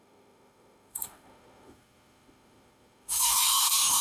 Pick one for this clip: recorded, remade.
remade